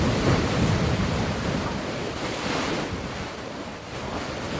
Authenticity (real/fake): real